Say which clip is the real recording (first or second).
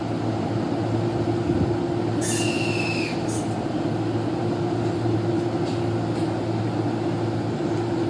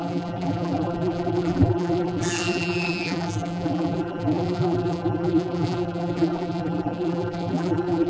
first